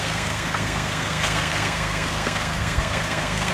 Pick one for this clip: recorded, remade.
remade